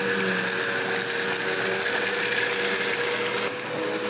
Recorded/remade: recorded